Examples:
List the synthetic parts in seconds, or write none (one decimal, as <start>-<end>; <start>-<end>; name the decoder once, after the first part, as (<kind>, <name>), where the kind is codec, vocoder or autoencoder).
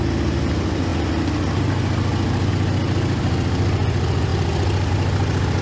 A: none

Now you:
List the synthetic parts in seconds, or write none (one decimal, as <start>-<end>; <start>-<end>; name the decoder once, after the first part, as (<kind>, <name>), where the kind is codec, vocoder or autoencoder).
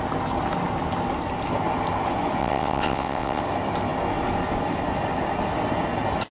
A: 2.4-3.4 (vocoder, WaveNeXt)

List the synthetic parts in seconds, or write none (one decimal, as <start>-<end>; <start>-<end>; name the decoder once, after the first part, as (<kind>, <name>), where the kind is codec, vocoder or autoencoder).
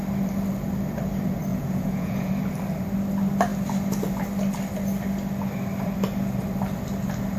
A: 1.5-2.3 (vocoder, Vocos)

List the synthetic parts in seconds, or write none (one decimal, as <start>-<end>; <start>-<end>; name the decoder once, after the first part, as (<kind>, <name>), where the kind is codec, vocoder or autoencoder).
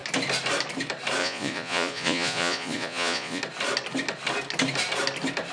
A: 1.2-3.4 (vocoder, Vocos)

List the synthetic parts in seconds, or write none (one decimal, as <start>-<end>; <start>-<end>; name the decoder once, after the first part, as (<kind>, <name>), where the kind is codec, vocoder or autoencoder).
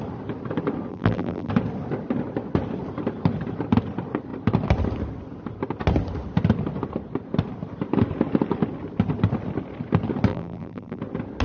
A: 0.9-1.5 (vocoder, BigVGAN v2); 10.3-11.0